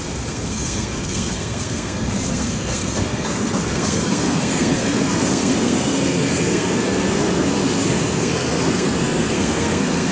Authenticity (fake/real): fake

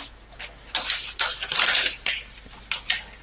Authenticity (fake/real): real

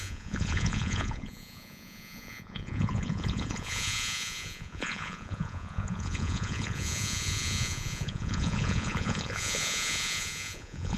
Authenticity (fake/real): fake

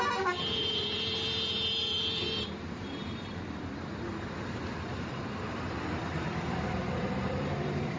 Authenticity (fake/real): fake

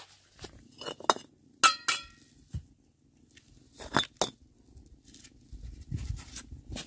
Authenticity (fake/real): real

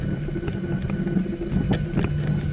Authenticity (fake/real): real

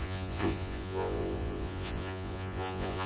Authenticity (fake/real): fake